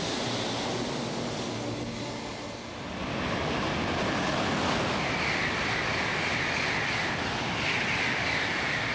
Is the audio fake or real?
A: real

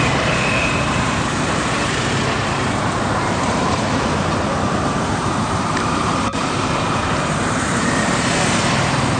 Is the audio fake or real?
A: fake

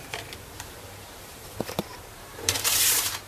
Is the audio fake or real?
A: fake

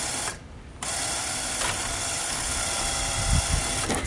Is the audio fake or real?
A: fake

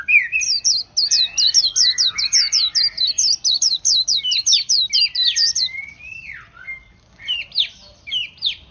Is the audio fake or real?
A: fake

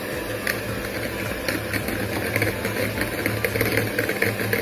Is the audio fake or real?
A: real